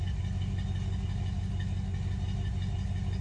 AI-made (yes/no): no